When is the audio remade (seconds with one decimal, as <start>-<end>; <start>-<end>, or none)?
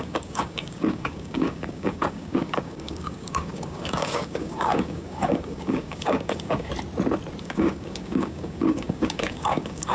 0.0-6.7; 7.4-9.9